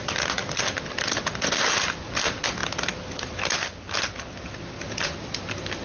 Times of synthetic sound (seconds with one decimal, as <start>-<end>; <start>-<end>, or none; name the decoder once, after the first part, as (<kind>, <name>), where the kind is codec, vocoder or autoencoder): none